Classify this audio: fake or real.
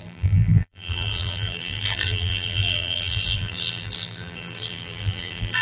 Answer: fake